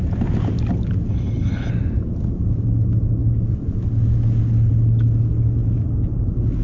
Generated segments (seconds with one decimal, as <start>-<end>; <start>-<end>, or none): 1.1-1.7